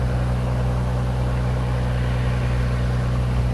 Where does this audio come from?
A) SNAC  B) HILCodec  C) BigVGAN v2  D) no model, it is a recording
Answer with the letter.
D